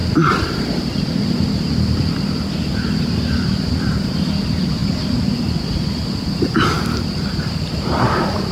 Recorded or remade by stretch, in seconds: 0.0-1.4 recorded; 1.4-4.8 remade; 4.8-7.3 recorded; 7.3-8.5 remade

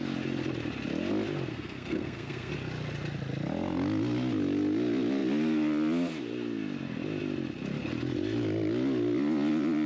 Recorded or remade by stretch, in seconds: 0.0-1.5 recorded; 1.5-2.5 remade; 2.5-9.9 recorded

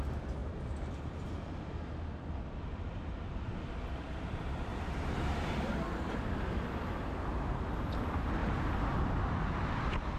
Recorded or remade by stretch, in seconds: 0.0-4.7 recorded; 4.7-5.5 remade; 5.5-8.4 recorded; 8.4-9.2 remade; 9.2-10.2 recorded

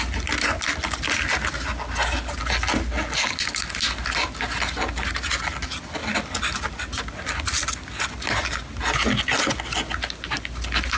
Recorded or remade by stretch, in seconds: 0.0-11.0 recorded

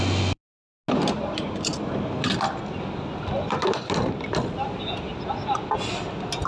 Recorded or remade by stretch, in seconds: 0.0-6.5 recorded

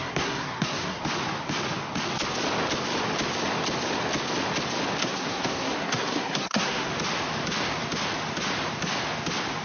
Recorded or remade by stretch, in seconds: 0.0-1.0 remade; 1.0-5.0 recorded; 5.0-6.9 remade; 6.9-9.6 recorded

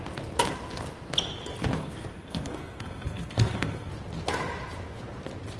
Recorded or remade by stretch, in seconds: 0.0-1.8 recorded; 1.8-3.9 remade; 3.9-5.6 recorded